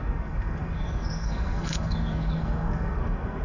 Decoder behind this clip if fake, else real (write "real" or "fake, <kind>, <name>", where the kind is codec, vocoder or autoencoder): fake, codec, SNAC